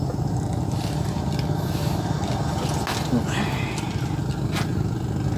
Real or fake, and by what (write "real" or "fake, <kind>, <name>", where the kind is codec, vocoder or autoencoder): real